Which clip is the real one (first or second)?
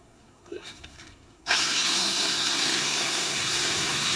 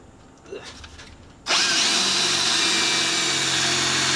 second